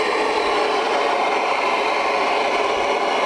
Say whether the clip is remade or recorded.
remade